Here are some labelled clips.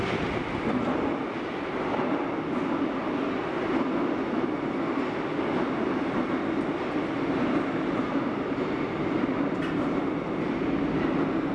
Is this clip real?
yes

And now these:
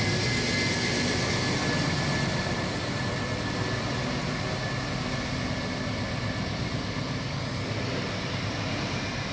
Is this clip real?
yes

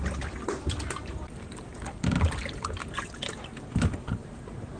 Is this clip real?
yes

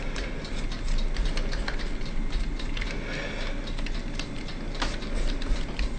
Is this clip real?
yes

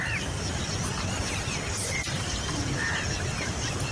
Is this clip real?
yes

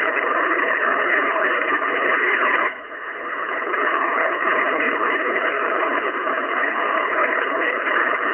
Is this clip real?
no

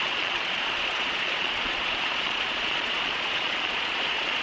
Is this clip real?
no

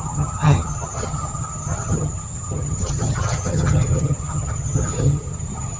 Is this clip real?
no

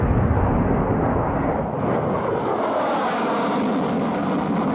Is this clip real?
yes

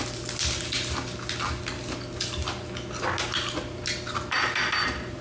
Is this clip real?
yes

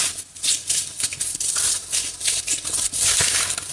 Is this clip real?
yes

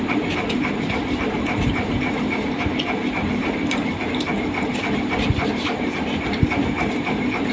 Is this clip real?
no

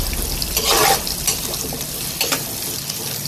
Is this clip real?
yes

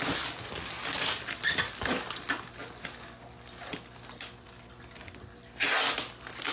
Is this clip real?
yes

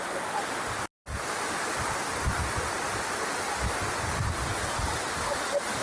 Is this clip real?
yes